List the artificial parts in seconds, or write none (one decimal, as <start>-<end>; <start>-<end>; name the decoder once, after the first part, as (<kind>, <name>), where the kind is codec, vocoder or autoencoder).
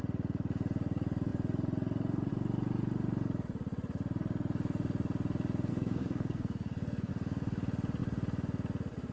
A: 5.7-7.1 (codec, SNAC)